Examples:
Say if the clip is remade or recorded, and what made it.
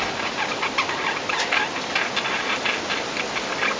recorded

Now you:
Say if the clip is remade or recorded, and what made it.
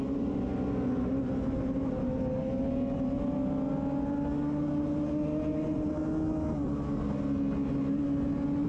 recorded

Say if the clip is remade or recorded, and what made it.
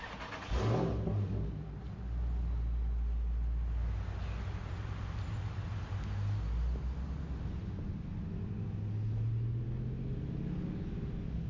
recorded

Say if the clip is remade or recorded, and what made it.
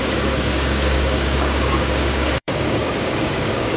remade, codec, DAC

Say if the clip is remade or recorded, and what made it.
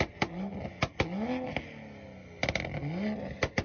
recorded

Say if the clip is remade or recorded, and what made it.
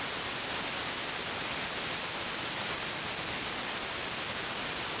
recorded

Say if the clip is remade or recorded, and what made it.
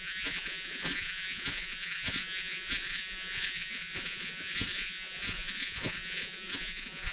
remade, vocoder, Vocos